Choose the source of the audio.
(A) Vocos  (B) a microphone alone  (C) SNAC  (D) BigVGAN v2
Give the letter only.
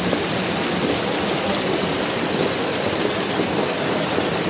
B